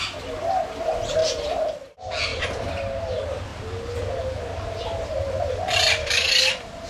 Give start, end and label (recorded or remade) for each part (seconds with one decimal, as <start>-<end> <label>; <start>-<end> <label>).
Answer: 0.0-6.0 recorded; 6.0-6.5 remade; 6.5-6.9 recorded